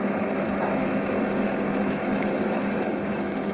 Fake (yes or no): yes